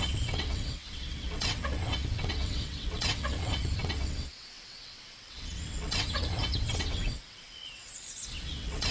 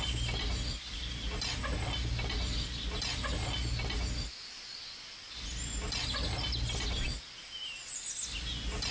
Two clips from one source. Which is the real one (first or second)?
second